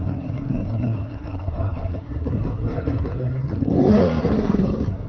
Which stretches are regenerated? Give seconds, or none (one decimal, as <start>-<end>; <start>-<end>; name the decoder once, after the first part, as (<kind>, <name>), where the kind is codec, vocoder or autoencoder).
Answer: 0.0-5.1 (codec, SNAC)